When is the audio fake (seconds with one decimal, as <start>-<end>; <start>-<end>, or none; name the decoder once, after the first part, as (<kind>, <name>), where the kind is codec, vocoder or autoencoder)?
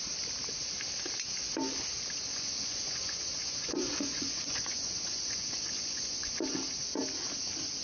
2.3-6.4 (vocoder, Vocos)